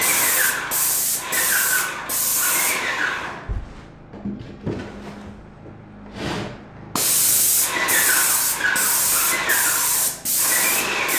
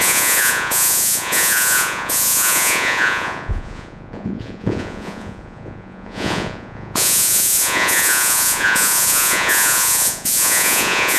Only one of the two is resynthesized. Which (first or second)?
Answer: second